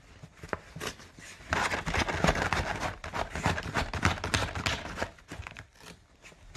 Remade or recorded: recorded